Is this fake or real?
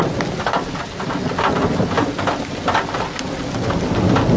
real